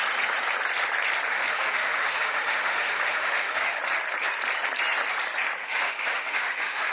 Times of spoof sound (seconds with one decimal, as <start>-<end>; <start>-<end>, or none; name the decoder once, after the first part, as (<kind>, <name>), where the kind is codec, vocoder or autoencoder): 1.3-3.8 (autoencoder, DAC-VAE); 5.6-6.9